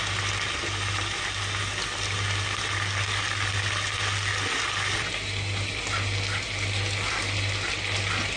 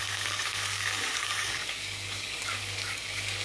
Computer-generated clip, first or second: second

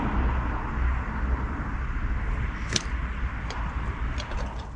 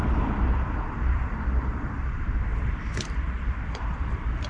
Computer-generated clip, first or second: second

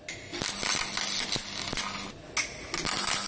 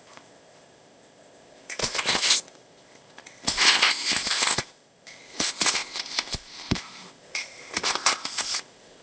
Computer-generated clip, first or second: second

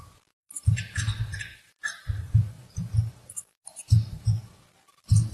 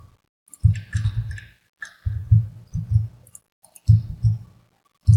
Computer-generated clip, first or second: first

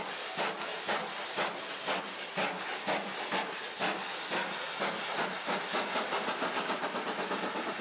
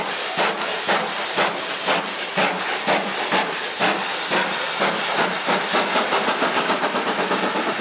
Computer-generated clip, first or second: second